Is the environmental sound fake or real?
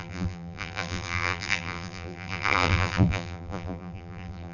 fake